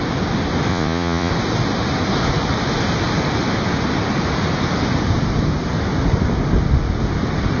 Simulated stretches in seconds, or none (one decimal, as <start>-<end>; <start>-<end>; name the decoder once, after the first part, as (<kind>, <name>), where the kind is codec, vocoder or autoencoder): 0.7-1.3 (vocoder, Vocos)